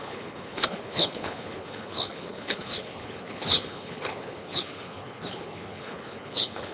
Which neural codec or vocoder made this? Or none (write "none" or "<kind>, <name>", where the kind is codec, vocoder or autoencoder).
codec, HILCodec